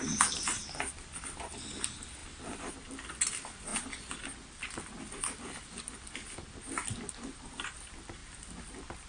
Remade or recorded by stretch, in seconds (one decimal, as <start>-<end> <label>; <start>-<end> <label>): 0.0-8.2 recorded; 8.2-9.1 remade